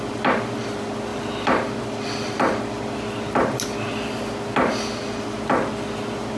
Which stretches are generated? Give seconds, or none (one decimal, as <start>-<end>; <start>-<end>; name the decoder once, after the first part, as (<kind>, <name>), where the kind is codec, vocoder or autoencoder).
none